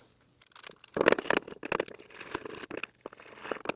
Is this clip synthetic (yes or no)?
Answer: no